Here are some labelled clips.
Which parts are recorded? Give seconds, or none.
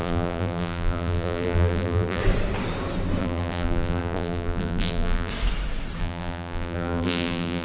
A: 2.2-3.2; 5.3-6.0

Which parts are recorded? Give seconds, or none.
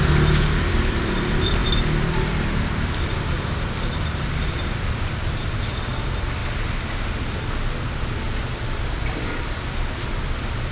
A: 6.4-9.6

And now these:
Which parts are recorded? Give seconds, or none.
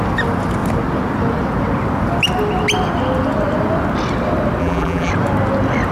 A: 0.0-4.6; 5.1-5.9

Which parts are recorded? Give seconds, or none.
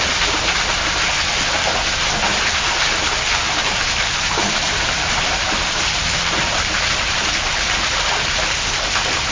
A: 0.0-3.8; 7.3-9.3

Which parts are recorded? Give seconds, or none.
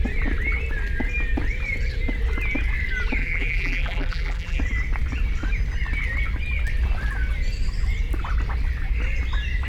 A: 0.0-3.2; 4.6-9.7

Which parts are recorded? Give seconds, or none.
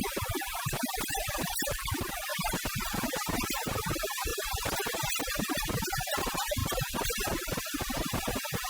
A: 0.0-8.7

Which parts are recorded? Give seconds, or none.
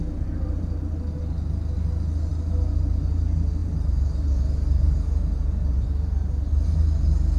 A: 0.0-3.6; 6.5-7.4